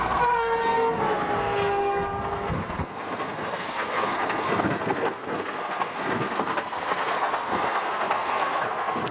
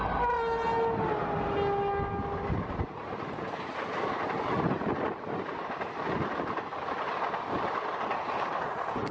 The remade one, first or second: first